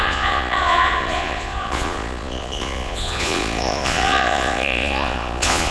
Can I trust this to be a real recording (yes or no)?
no